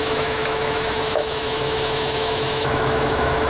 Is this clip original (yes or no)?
no